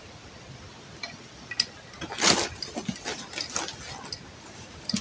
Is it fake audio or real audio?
real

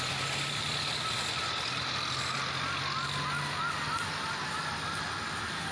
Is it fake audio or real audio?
real